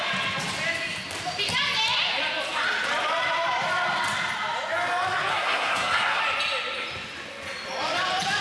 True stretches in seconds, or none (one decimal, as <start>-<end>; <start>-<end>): 0.0-5.3; 6.2-8.4